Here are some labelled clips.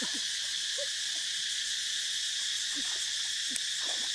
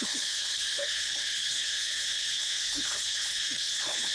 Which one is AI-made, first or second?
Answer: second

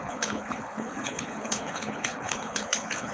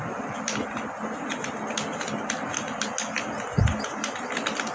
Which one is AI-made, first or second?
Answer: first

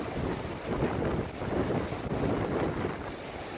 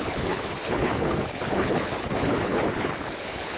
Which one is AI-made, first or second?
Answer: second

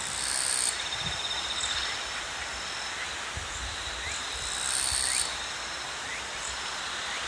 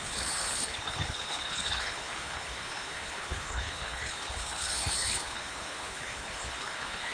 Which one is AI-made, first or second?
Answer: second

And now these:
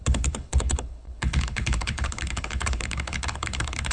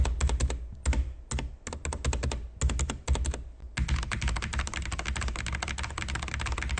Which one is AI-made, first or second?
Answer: first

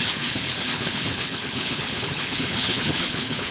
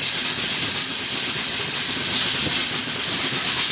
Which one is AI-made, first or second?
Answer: first